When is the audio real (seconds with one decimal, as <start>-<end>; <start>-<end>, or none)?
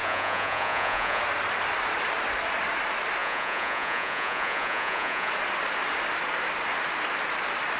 1.2-3.2; 5.3-7.8